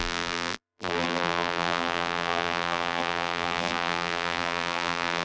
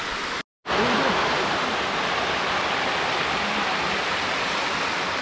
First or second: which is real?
second